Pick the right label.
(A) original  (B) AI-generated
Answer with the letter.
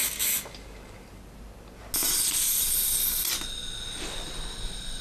A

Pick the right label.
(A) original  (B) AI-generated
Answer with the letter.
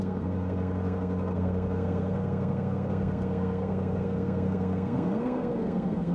B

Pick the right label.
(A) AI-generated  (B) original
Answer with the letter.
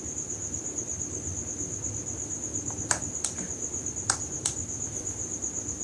B